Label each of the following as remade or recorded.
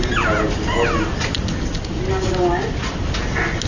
recorded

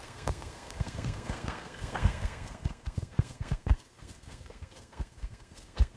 remade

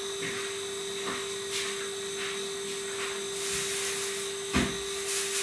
recorded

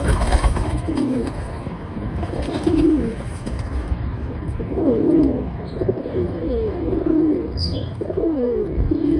remade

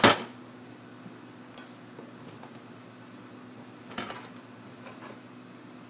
recorded